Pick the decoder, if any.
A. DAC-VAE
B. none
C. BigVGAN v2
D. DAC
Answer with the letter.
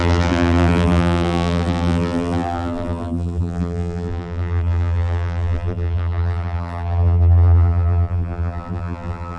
C